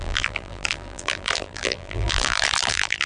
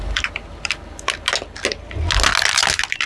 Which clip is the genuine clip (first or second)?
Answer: second